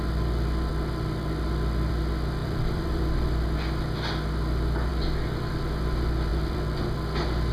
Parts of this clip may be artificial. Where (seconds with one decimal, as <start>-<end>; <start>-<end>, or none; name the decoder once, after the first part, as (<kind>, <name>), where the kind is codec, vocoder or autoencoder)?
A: 2.4-3.4 (vocoder, BigVGAN v2); 4.9-5.6; 6.3-6.8